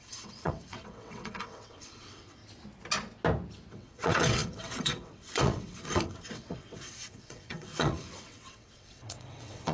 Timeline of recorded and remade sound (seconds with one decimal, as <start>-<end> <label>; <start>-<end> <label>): 0.0-2.4 remade; 2.4-3.7 recorded; 3.7-9.7 remade